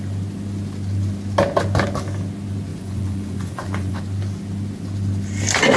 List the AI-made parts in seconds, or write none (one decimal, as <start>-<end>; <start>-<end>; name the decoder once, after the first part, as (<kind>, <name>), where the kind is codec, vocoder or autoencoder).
2.7-4.0 (vocoder, Vocos)